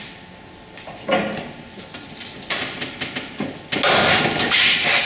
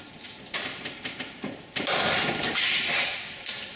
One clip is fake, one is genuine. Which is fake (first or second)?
second